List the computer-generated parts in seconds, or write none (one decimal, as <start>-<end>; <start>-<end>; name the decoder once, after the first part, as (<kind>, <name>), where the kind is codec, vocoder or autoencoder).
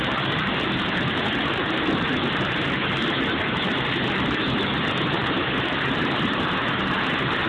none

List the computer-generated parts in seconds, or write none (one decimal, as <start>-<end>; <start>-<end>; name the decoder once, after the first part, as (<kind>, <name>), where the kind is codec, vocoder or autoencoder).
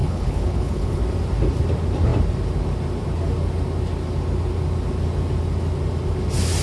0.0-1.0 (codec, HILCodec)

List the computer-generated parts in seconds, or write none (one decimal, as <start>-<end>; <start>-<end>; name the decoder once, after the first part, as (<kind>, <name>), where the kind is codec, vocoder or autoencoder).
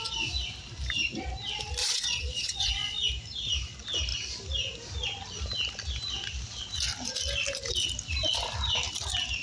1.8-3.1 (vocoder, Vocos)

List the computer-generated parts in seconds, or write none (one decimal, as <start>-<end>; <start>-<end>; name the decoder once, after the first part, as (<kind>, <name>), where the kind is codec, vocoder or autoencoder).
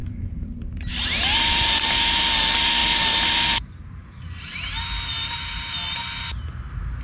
0.0-2.2 (vocoder, BigVGAN v2); 2.8-4.2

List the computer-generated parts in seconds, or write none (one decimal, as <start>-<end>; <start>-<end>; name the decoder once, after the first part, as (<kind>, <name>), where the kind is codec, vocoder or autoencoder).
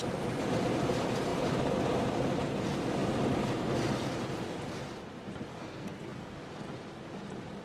5.5-6.4 (codec, SNAC)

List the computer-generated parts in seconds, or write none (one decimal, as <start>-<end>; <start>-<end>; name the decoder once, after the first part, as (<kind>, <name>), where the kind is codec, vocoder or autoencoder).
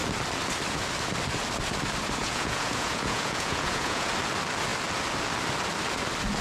2.2-4.1 (vocoder, Vocos)